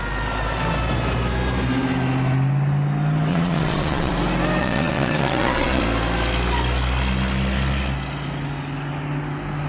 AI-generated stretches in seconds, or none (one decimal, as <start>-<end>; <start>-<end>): 3.3-4.1; 4.6-5.8